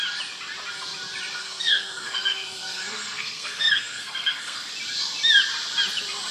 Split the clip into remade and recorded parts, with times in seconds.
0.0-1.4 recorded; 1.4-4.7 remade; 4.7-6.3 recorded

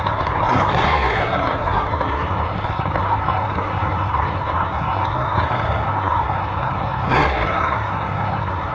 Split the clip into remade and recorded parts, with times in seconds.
0.0-8.7 remade

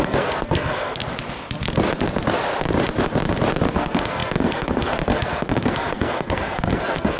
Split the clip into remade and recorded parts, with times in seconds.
0.0-1.0 remade; 1.0-3.7 recorded; 3.7-7.2 remade